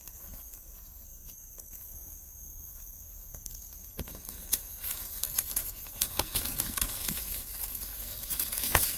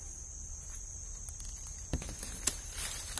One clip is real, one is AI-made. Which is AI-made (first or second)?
first